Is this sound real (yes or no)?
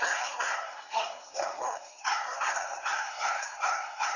no